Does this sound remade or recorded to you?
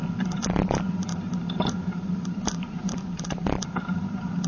remade